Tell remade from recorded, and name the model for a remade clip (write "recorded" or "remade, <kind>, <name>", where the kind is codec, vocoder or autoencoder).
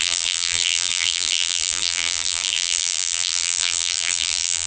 remade, vocoder, BigVGAN v2